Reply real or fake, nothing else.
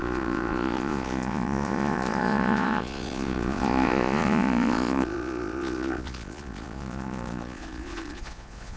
fake